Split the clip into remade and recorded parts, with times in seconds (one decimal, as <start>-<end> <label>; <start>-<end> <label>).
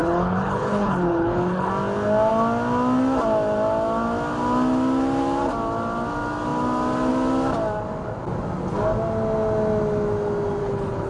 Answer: 0.0-1.7 remade; 1.7-10.6 recorded; 10.6-11.1 remade